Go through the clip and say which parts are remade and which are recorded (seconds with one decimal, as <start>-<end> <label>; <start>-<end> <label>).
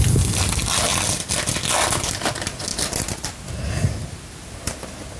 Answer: 0.0-5.2 recorded